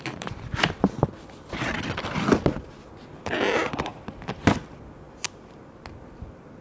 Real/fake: real